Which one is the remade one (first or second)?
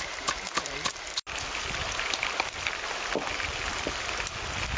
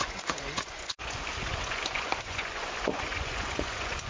second